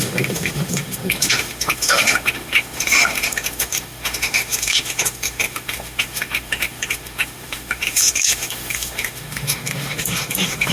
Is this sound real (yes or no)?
no